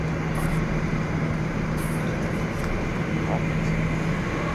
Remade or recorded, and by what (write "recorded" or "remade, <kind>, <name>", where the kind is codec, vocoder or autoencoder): recorded